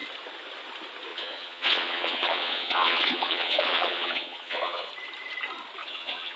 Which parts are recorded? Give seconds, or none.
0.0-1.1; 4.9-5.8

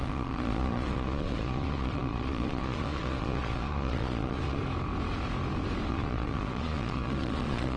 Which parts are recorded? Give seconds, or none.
4.6-5.9

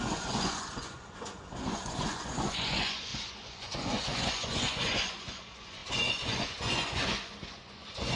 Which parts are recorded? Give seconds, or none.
none

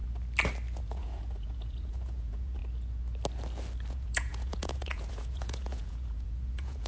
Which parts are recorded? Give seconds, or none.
0.0-0.8; 2.6-3.9

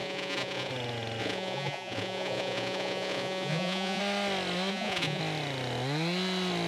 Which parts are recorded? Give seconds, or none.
0.7-1.2; 4.0-4.7; 5.2-6.7

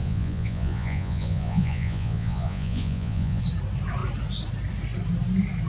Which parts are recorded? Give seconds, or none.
3.4-5.7

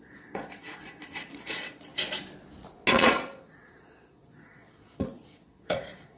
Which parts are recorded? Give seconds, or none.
1.9-2.9